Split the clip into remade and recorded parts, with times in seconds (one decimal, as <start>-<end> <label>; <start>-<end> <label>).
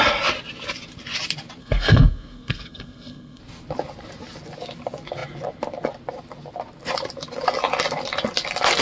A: 0.0-1.6 recorded; 1.6-3.4 remade; 3.4-8.8 recorded